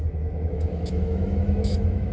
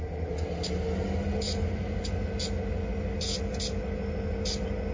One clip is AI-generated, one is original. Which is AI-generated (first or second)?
first